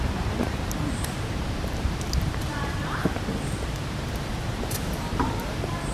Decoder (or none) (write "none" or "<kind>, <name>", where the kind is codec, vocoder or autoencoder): vocoder, BigVGAN v2